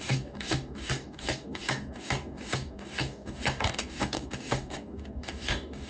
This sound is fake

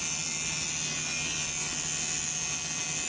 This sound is real